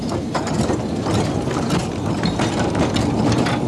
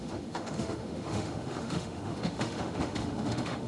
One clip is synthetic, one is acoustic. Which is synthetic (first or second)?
second